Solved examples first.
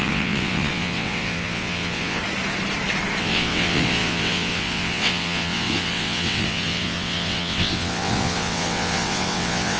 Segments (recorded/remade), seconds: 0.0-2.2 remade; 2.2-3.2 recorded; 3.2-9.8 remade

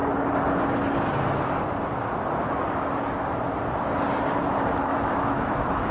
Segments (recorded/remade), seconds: 0.0-4.9 recorded; 4.9-5.9 remade

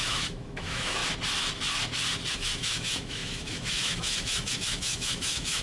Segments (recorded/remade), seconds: 0.0-1.0 remade; 1.0-2.3 recorded; 2.3-5.6 remade

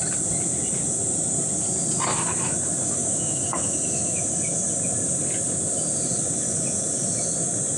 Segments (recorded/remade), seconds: 0.0-2.1 recorded; 2.1-4.2 remade; 4.2-7.8 recorded

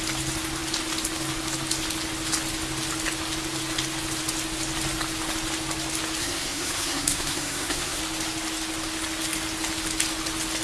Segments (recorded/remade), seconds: 0.0-6.2 recorded; 6.2-8.0 remade; 8.0-10.6 recorded

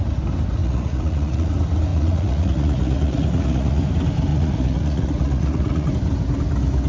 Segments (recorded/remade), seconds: 0.0-0.6 recorded; 0.6-1.5 remade; 1.5-1.9 recorded; 1.9-3.8 remade; 3.8-4.3 recorded; 4.3-5.9 remade; 5.9-6.9 recorded